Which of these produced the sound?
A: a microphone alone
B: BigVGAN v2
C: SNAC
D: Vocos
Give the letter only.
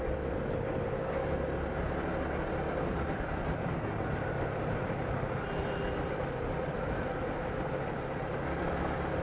A